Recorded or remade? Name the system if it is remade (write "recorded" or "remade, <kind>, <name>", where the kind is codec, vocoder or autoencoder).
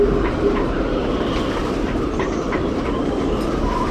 remade, vocoder, BigVGAN v2